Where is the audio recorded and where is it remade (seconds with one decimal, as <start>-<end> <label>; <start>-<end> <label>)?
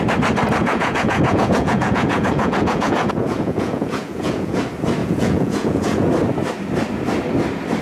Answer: 0.0-0.6 recorded; 0.6-4.6 remade; 4.6-5.0 recorded; 5.0-6.1 remade; 6.1-7.8 recorded